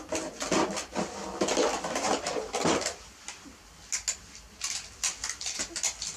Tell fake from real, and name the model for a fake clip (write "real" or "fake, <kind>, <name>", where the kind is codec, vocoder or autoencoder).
real